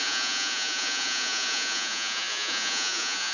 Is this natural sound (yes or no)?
no